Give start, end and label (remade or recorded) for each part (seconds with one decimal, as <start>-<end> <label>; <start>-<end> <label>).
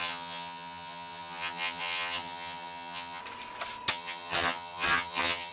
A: 0.0-3.2 remade; 3.2-3.9 recorded; 3.9-5.5 remade